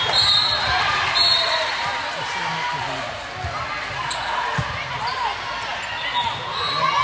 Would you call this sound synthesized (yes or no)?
no